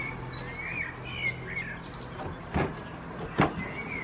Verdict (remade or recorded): recorded